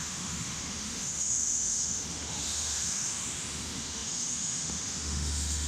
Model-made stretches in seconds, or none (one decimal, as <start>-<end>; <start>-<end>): 0.0-5.7